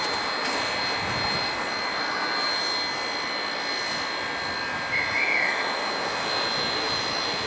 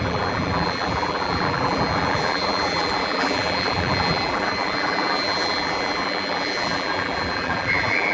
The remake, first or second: second